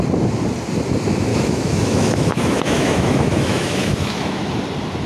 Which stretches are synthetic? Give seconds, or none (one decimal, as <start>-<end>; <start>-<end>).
1.3-4.4